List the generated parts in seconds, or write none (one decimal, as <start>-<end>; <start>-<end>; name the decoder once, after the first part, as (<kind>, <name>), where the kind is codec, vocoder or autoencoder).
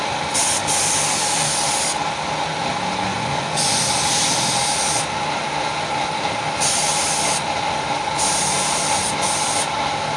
3.1-3.8 (vocoder, Vocos)